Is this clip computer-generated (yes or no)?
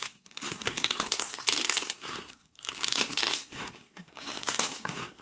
yes